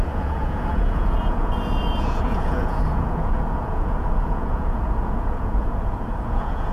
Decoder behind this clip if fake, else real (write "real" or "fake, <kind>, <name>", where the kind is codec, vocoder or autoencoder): fake, vocoder, Vocos